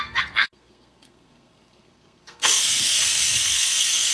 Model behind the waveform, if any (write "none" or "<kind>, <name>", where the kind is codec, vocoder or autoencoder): codec, SNAC